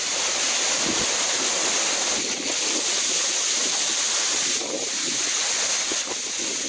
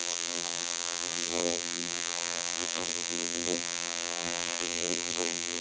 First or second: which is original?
first